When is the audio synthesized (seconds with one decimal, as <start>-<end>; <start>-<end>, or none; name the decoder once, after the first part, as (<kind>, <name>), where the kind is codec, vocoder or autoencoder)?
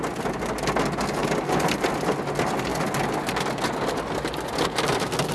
1.2-1.9 (vocoder, BigVGAN v2)